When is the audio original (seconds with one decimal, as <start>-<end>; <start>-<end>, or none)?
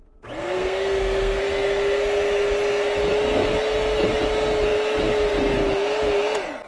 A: 0.0-0.4; 1.4-6.7